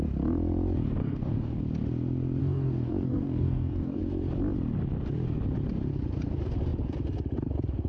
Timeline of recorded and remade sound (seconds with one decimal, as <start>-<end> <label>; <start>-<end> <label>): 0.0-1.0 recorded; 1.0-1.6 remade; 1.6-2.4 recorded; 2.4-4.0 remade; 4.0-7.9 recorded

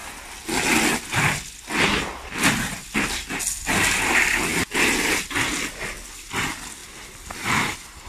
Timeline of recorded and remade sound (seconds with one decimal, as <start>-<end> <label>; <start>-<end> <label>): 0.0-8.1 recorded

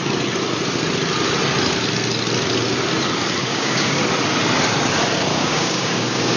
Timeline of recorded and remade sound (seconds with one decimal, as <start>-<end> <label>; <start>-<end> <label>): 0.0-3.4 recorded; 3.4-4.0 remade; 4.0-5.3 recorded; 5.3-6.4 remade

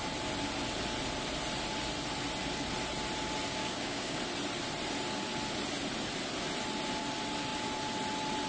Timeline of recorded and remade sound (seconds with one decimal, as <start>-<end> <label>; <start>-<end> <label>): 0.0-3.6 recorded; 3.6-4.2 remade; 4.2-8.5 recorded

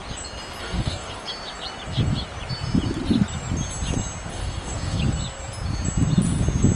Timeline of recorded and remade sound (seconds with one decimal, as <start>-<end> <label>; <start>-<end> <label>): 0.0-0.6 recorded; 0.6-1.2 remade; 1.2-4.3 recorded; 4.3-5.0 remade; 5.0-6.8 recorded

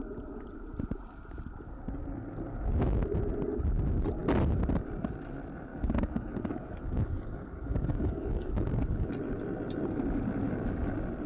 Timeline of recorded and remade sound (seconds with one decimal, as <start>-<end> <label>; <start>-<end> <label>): 0.0-5.7 recorded; 5.7-9.1 remade; 9.1-11.3 recorded